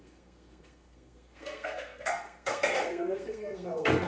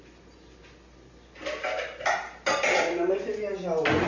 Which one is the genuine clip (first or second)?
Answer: second